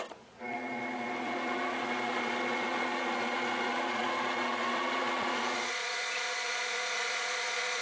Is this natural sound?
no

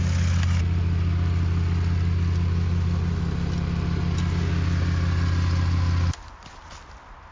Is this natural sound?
yes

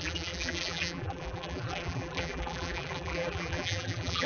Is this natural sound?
no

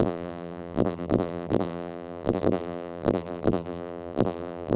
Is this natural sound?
no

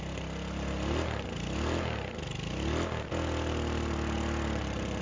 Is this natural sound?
yes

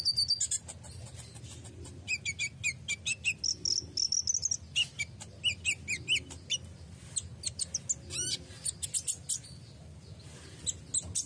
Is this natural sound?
yes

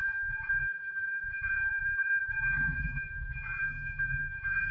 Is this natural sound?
no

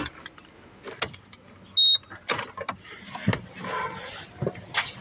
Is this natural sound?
yes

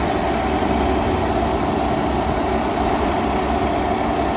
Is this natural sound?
yes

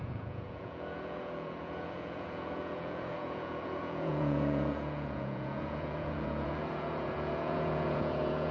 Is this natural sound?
no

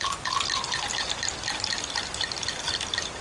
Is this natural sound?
yes